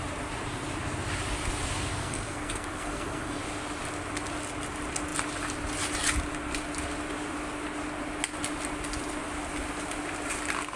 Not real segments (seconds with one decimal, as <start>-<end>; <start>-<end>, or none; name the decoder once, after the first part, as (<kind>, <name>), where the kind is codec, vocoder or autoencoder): 1.9-3.4 (codec, SNAC)